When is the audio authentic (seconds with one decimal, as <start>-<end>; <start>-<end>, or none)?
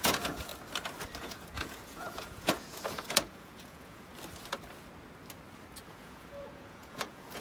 0.5-1.2; 4.1-5.9